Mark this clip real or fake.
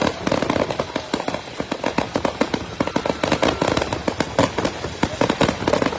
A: real